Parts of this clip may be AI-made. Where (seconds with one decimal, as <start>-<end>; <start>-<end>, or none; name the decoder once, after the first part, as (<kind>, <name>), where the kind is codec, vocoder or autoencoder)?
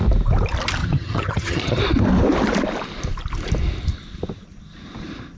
0.8-1.8 (vocoder, HiFi-GAN)